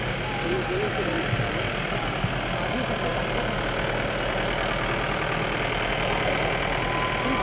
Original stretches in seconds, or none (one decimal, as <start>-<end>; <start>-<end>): 0.0-7.4

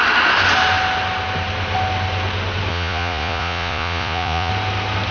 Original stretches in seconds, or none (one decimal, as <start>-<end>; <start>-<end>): 0.0-2.7; 4.5-5.1

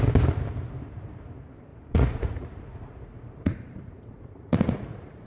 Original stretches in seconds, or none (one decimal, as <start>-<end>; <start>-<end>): 0.0-1.7

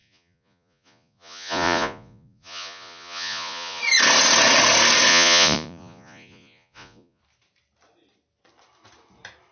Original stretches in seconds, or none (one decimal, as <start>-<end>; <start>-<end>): 3.8-5.1; 7.2-9.5